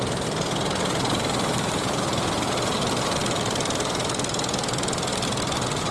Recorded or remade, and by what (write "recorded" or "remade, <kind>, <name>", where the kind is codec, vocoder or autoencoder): recorded